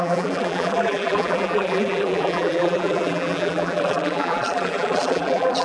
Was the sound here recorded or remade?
remade